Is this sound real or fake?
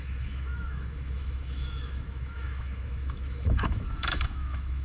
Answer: fake